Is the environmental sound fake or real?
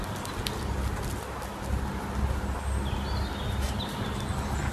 real